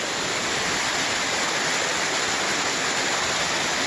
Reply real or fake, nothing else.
real